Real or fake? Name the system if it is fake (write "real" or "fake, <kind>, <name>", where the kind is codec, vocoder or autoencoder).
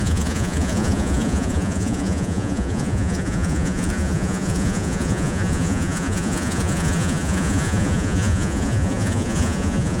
fake, vocoder, Vocos